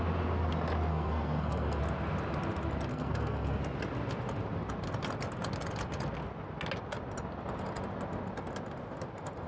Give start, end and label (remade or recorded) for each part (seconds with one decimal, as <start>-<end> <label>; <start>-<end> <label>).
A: 0.0-0.9 recorded; 0.9-1.8 remade; 1.8-2.9 recorded; 2.9-3.6 remade; 3.6-9.5 recorded